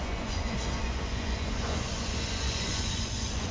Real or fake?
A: fake